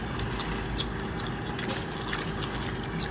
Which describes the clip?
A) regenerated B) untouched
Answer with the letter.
B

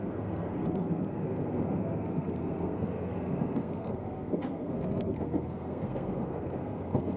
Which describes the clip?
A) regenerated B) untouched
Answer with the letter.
A